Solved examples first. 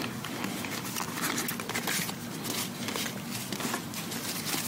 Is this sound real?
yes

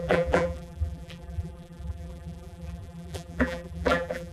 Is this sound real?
no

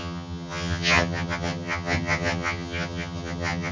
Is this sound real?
no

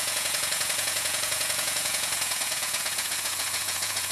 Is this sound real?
no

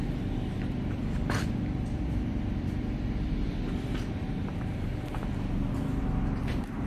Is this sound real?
no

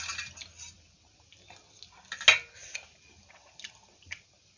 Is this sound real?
yes